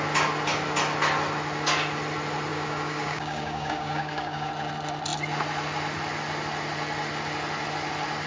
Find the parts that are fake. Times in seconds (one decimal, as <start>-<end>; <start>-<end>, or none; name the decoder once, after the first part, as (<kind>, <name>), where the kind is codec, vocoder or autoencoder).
2.5-4.5 (codec, DAC)